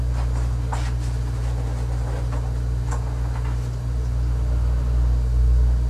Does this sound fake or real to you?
real